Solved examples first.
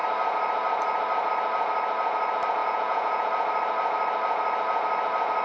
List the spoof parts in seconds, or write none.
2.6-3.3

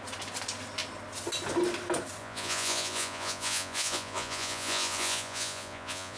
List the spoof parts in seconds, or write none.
2.2-6.2

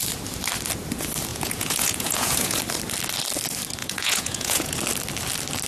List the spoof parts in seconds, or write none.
1.3-2.6; 3.8-4.8

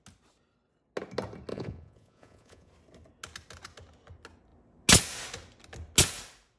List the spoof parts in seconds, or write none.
1.5-2.7

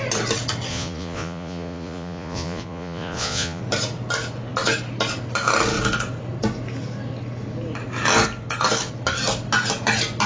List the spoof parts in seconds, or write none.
0.7-3.6

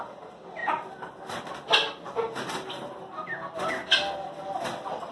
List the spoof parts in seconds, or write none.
none